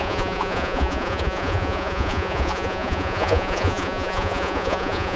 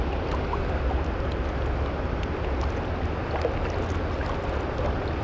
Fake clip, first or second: first